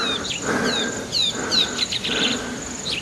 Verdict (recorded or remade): recorded